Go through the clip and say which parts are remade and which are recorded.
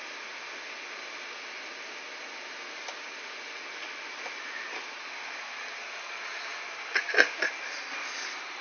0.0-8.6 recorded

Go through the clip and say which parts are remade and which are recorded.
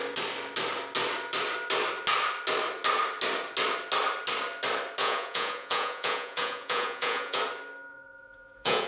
0.0-5.0 recorded; 5.0-7.4 remade; 7.4-7.9 recorded; 7.9-8.9 remade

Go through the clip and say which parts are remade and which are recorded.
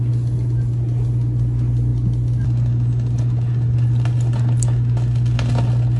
0.0-6.0 recorded